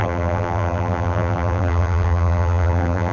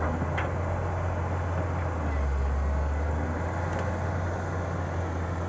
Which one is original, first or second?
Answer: second